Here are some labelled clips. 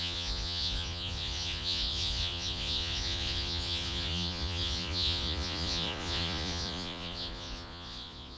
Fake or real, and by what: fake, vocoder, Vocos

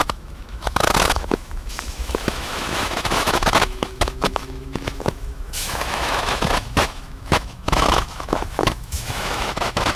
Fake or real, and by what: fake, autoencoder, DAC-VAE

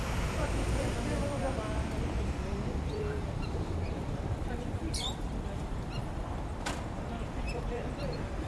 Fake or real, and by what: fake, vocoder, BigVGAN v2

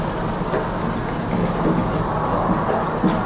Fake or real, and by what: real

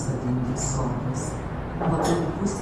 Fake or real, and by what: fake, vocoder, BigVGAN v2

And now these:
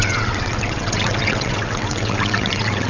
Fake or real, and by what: fake, vocoder, WaveNeXt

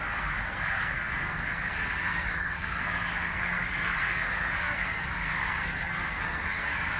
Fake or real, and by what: fake, codec, SNAC